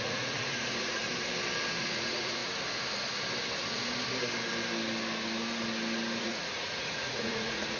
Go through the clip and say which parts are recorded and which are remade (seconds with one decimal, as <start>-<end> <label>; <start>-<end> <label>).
0.0-1.1 remade; 1.1-1.8 recorded; 1.8-2.4 remade; 2.4-6.2 recorded; 6.2-7.8 remade

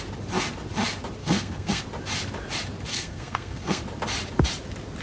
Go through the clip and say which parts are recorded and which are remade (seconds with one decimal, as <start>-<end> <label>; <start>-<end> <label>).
0.0-1.2 recorded; 1.2-1.8 remade; 1.8-2.9 recorded; 2.9-3.8 remade; 3.8-5.0 recorded

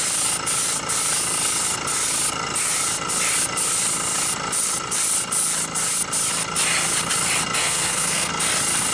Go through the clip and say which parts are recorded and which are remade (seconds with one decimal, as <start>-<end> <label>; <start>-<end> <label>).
0.0-7.6 recorded; 7.6-8.3 remade; 8.3-8.9 recorded

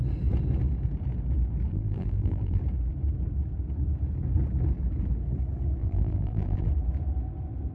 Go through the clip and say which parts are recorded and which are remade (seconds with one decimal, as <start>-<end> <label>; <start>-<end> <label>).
0.0-1.7 recorded; 1.7-2.6 remade; 2.6-5.8 recorded; 5.8-6.7 remade; 6.7-7.7 recorded